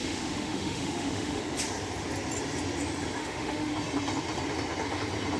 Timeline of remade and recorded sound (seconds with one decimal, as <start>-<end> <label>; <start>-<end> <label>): 0.0-1.4 remade; 1.4-3.2 recorded; 3.2-3.7 remade; 3.7-5.4 recorded